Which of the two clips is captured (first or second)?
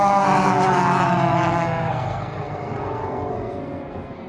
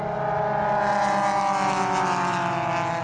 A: second